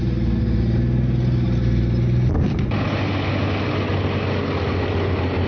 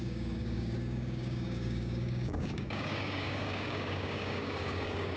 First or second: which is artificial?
second